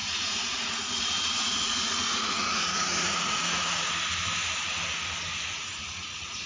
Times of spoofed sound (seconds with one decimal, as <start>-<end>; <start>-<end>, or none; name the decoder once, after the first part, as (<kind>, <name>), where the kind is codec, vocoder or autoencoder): 0.0-3.9 (vocoder, Vocos); 5.3-6.5